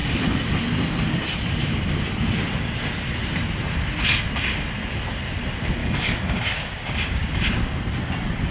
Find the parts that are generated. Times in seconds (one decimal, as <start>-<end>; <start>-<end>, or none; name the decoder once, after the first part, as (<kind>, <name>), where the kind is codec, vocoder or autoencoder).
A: 5.8-7.8 (codec, DAC)